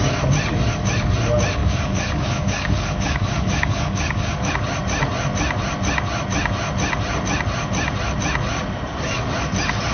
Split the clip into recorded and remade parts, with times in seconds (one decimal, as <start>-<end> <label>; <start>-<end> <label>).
0.0-1.6 recorded; 1.6-4.5 remade; 4.5-9.9 recorded

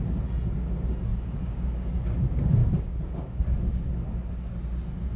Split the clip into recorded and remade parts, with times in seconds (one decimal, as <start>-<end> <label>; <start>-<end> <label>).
0.0-1.1 recorded; 1.1-2.1 remade; 2.1-2.6 recorded; 2.6-3.4 remade; 3.4-5.2 recorded

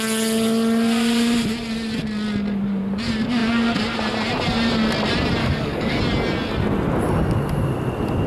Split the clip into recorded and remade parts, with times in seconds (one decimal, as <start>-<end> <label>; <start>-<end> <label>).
0.0-5.4 recorded; 5.4-6.0 remade; 6.0-8.3 recorded

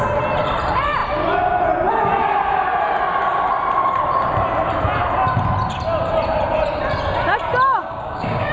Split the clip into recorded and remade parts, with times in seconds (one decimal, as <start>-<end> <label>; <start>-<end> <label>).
0.0-7.8 recorded; 7.8-8.5 remade

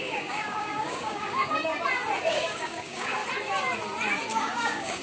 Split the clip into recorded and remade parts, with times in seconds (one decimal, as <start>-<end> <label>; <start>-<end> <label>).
0.0-1.7 remade; 1.7-2.3 recorded; 2.3-3.2 remade; 3.2-4.3 recorded; 4.3-5.0 remade

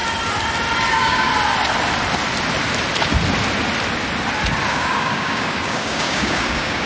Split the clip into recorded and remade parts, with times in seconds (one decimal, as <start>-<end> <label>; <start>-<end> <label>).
0.0-0.9 recorded; 0.9-1.3 remade; 1.3-4.7 recorded; 4.7-6.9 remade

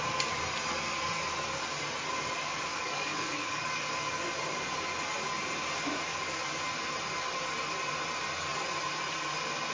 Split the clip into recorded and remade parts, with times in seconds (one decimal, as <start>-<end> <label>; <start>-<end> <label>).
0.0-2.7 recorded; 2.7-3.8 remade; 3.8-6.1 recorded; 6.1-6.6 remade; 6.6-9.7 recorded

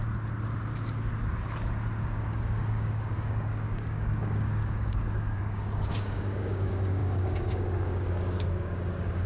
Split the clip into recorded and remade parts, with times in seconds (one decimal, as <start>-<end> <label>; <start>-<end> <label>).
0.0-2.0 recorded; 2.0-9.3 remade